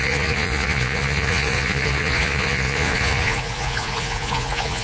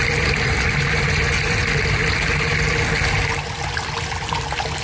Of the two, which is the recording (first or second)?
second